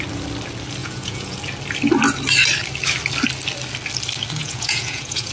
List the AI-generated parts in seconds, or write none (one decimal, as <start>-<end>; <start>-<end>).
0.8-1.4; 4.4-5.3